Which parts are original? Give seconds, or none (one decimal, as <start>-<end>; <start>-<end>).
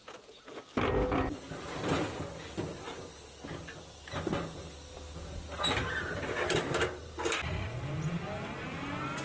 0.6-9.2